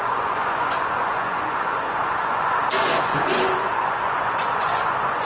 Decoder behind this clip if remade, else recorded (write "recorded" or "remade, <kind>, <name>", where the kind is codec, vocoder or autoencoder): remade, vocoder, Vocos